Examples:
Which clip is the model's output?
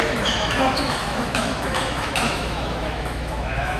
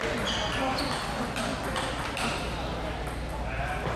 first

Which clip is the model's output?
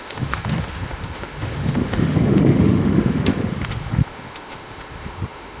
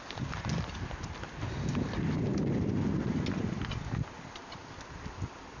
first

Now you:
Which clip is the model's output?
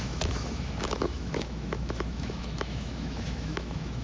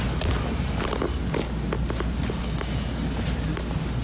first